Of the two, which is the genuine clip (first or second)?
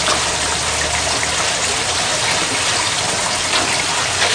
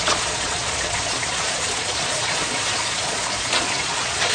first